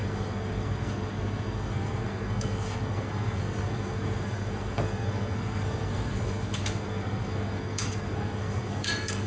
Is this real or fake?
fake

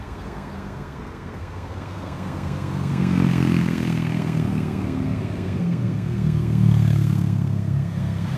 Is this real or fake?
fake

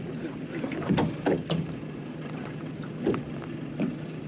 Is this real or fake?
real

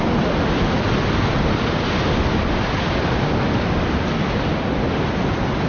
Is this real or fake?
real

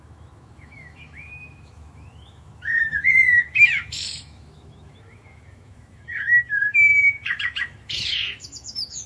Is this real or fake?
fake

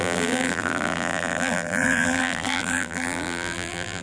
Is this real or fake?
fake